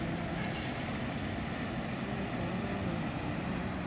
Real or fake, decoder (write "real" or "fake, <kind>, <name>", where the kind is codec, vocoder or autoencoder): real